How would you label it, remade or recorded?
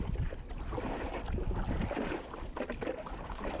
recorded